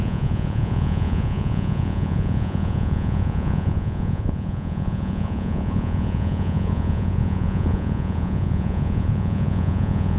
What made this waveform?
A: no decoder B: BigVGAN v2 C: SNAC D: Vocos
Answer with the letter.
D